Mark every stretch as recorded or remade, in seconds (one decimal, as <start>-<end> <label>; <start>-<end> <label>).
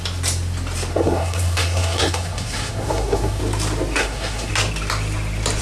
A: 0.0-0.9 recorded; 0.9-3.4 remade; 3.4-4.0 recorded; 4.0-4.5 remade; 4.5-5.6 recorded